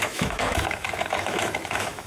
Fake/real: fake